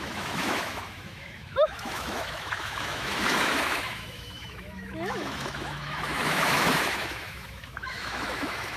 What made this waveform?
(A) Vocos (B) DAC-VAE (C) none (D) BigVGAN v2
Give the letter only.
B